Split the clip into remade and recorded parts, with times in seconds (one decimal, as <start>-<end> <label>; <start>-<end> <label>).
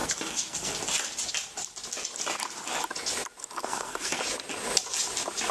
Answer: 0.0-0.8 remade; 0.8-3.6 recorded; 3.6-4.2 remade; 4.2-5.5 recorded